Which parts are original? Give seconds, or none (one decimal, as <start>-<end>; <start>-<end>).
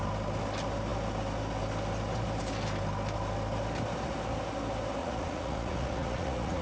0.0-5.0